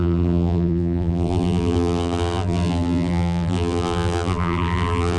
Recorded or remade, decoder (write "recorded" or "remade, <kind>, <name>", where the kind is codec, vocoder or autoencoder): remade, vocoder, BigVGAN v2